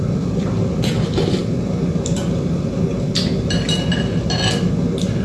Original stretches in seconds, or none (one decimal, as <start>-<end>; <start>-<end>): 0.0-5.2